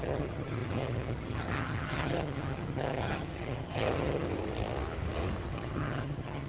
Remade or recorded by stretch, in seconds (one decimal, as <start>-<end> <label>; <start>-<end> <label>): 0.0-4.3 remade; 4.3-5.5 recorded; 5.5-6.5 remade